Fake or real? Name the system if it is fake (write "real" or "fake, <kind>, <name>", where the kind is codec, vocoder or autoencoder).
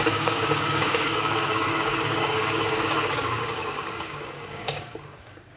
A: fake, codec, DAC